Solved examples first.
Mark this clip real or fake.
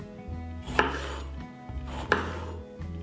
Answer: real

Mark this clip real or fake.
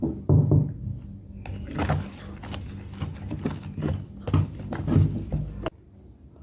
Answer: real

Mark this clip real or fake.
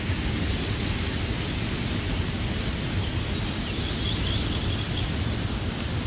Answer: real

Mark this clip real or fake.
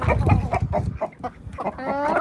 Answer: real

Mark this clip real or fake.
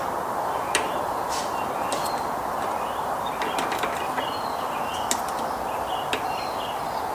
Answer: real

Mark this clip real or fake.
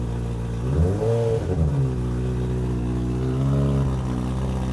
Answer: real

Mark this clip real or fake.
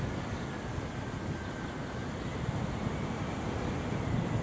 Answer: real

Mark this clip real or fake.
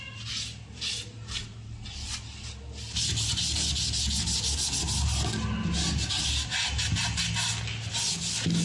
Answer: real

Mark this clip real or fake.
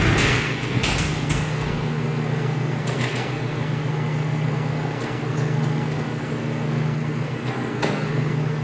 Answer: fake